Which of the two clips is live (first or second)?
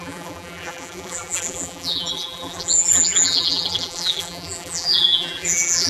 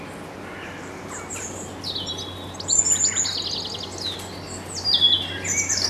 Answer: second